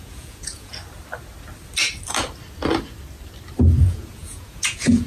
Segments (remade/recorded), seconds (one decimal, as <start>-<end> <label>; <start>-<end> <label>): 0.0-0.7 remade; 0.7-3.8 recorded; 3.8-5.1 remade